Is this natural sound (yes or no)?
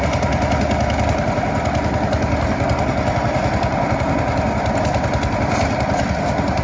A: yes